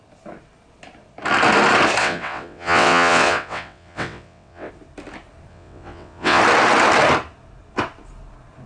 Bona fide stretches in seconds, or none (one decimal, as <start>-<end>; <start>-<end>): 0.0-2.0; 4.7-5.5; 6.4-8.7

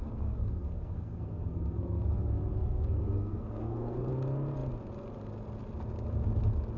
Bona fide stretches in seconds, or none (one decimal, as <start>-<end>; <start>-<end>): 4.1-6.8